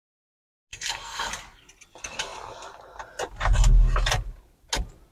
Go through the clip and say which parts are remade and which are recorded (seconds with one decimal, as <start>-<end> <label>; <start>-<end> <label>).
0.0-0.7 recorded; 0.7-1.3 remade; 1.3-5.1 recorded